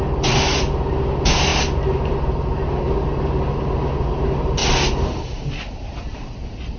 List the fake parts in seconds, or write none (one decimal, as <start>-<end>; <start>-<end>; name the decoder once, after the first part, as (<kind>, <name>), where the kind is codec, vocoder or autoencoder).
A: 4.6-5.6 (vocoder, BigVGAN v2); 6.1-6.8